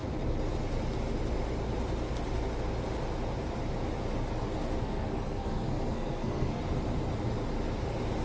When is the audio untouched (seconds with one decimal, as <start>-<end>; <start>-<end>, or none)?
0.0-4.8; 6.6-8.2